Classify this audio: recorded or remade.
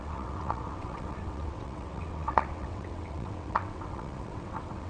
remade